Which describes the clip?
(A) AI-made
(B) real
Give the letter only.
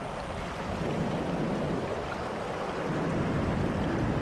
B